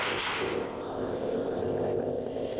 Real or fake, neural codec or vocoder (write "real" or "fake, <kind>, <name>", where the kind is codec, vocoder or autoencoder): fake, codec, ZipCodec